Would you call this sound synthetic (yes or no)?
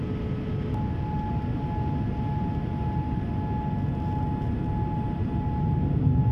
no